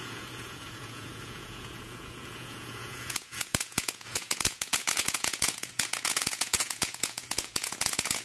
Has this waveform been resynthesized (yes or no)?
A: yes